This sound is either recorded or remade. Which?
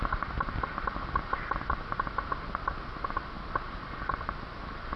recorded